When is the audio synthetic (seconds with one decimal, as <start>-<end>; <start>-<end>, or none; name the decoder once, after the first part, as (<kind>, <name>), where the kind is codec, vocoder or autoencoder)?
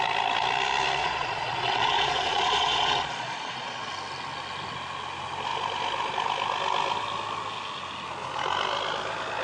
1.0-3.9 (vocoder, Vocos)